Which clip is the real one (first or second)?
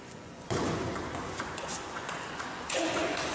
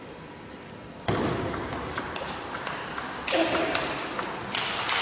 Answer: second